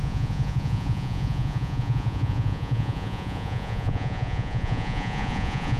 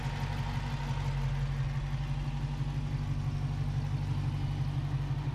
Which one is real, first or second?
second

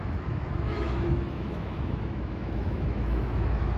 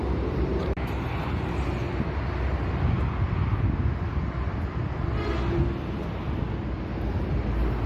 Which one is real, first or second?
second